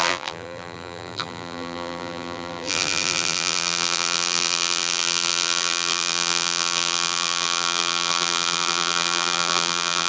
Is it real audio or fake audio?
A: fake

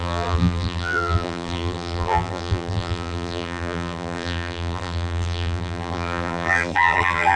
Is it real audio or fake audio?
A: fake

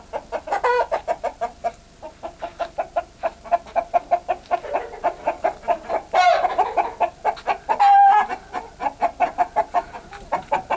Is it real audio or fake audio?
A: real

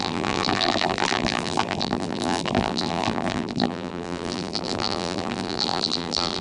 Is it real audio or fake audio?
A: fake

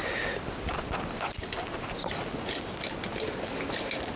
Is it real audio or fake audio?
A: real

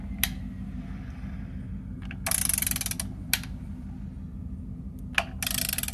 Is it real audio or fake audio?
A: real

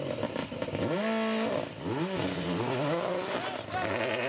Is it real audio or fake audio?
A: real